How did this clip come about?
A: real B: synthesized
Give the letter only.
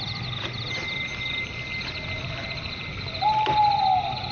A